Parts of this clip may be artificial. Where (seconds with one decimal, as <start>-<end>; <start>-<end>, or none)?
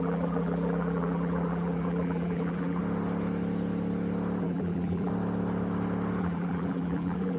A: 0.0-2.8; 4.4-5.1; 6.2-7.4